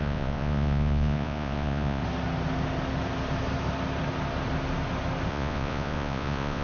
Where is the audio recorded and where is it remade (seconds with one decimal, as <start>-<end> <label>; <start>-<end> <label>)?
0.0-2.0 remade; 2.0-5.3 recorded; 5.3-6.6 remade